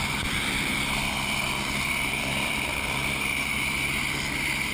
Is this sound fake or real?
fake